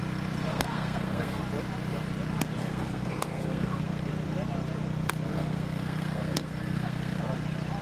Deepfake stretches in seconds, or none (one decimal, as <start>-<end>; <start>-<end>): 0.5-1.4; 2.6-4.1; 5.3-7.2